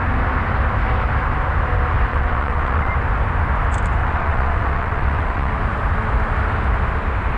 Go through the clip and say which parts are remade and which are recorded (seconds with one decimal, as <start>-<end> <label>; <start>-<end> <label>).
0.0-2.1 recorded; 2.1-2.9 remade; 2.9-4.0 recorded; 4.0-5.5 remade; 5.5-7.4 recorded